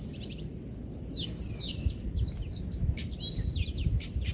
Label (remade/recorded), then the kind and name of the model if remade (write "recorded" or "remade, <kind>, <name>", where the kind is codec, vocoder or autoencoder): recorded